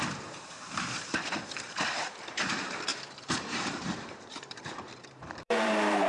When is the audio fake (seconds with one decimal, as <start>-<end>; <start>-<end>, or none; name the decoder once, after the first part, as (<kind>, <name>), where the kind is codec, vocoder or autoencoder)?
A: 0.0-6.1 (vocoder, BigVGAN v2)